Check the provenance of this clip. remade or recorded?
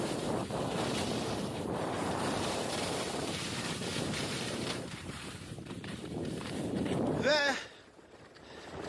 remade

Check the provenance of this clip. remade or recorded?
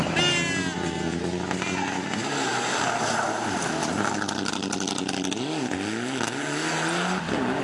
recorded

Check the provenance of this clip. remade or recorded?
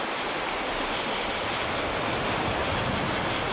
recorded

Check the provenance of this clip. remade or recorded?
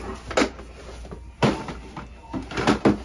recorded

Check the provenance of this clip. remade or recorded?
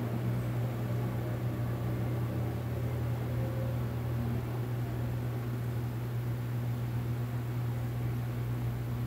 recorded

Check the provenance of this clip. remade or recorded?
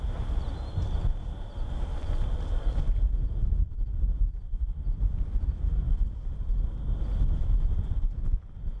recorded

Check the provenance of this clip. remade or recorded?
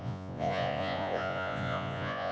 remade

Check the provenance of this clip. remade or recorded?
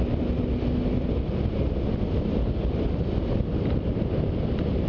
recorded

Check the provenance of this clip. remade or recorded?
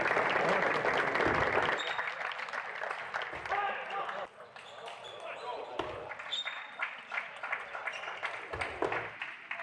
recorded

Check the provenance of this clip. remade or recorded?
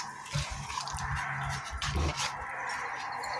recorded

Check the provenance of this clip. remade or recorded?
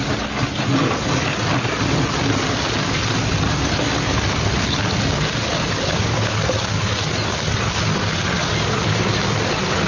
recorded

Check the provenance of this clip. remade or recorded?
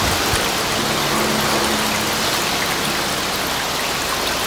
recorded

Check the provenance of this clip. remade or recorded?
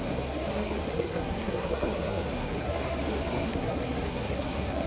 remade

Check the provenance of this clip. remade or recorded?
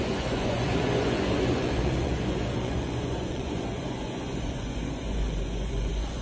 remade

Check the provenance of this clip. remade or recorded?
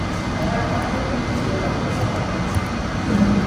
recorded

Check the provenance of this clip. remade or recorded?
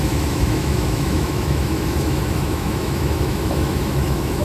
remade